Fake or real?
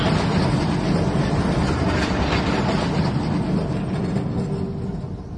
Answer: real